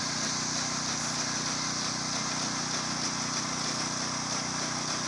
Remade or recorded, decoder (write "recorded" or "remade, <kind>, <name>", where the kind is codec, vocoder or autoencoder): recorded